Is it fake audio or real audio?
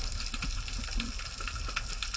real